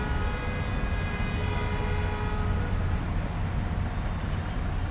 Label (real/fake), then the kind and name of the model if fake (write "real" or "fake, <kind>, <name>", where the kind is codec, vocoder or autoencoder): real